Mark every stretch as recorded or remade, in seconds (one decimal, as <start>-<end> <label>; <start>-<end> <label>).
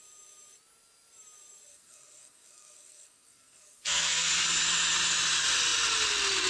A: 0.0-1.7 recorded; 1.7-4.3 remade; 4.3-6.5 recorded